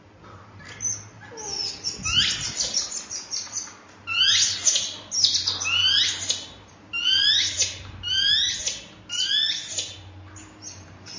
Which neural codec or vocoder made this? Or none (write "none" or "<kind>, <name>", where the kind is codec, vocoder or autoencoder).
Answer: none